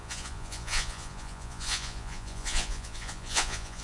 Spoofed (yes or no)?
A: yes